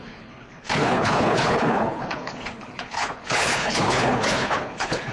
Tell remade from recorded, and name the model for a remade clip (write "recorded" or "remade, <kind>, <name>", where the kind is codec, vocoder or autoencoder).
remade, codec, HILCodec